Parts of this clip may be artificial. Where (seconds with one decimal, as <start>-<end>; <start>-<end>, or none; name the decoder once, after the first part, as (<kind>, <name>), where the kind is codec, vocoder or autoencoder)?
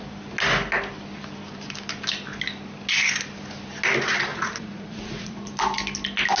4.3-5.5 (vocoder, Vocos)